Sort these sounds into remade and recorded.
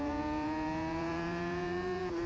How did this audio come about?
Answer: remade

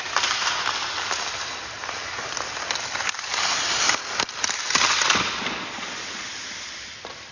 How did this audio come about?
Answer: recorded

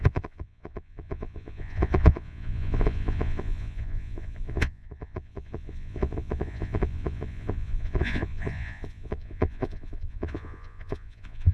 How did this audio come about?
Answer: remade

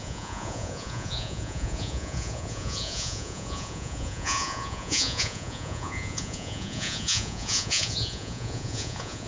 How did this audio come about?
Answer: remade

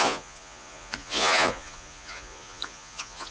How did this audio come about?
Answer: remade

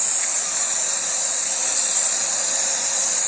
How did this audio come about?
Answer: remade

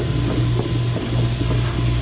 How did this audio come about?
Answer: recorded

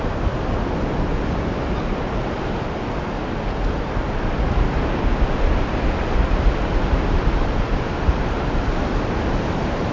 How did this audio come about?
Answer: recorded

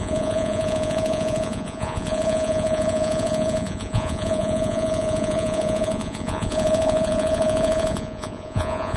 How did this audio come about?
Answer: remade